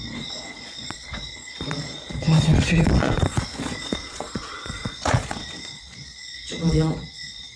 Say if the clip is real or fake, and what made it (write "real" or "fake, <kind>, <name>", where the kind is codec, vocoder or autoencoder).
fake, vocoder, Vocos